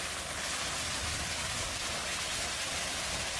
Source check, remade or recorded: recorded